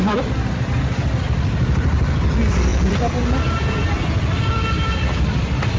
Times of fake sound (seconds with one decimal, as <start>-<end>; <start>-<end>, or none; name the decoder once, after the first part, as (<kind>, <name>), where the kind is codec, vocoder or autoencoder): 0.0-5.8 (vocoder, BigVGAN v2)